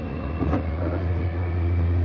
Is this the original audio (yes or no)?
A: no